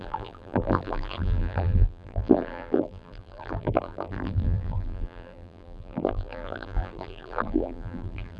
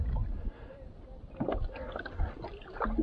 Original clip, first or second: second